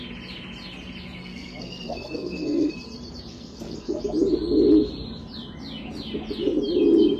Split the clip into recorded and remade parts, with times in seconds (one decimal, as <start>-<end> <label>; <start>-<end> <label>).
0.0-1.2 recorded; 1.2-2.7 remade; 2.7-3.3 recorded; 3.3-4.0 remade; 4.0-7.2 recorded